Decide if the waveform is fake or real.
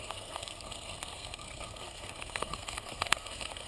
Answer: fake